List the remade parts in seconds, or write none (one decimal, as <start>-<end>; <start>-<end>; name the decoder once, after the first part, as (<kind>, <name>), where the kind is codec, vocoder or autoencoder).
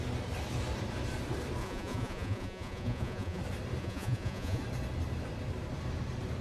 1.6-3.4 (vocoder, Vocos); 3.8-4.6